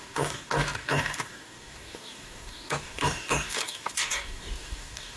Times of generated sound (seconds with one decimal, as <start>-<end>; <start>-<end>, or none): 0.0-5.2